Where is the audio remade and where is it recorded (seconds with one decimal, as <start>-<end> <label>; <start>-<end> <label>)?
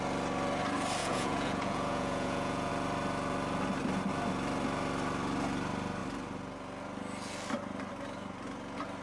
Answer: 0.0-1.0 recorded; 1.0-2.7 remade; 2.7-9.0 recorded